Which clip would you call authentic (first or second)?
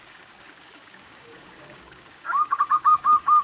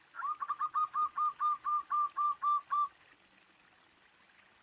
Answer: second